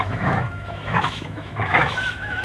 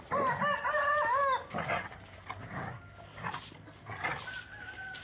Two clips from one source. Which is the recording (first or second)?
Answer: second